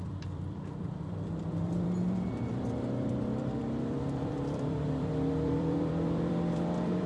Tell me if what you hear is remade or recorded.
remade